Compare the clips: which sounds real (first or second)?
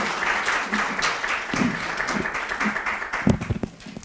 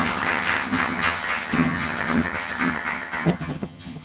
first